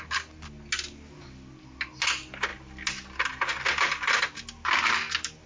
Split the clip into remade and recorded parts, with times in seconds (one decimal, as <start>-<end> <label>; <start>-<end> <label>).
0.0-5.5 recorded